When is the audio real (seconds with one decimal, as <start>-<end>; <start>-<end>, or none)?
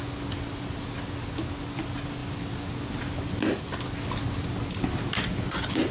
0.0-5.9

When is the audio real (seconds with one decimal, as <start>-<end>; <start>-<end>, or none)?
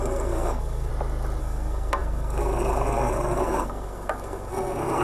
0.9-1.4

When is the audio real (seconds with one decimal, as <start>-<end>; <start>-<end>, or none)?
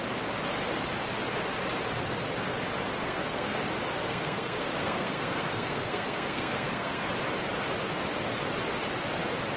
0.0-3.0; 3.6-4.1; 7.1-9.6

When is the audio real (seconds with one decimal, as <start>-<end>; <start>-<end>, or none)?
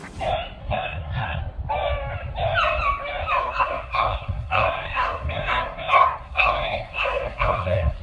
0.0-0.6; 1.4-3.4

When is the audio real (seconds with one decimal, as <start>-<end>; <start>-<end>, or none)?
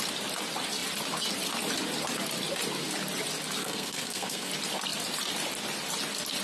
0.0-3.6; 4.5-6.4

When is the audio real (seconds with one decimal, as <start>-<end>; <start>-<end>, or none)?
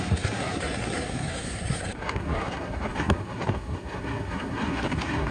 none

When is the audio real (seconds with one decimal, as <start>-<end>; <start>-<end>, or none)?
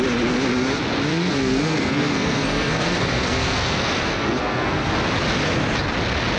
0.0-1.1; 4.9-6.4